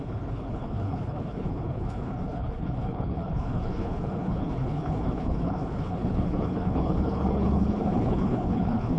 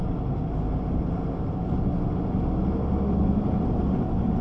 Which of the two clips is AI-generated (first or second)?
first